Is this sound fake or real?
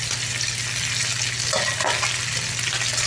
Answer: real